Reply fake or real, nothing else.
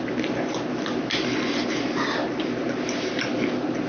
real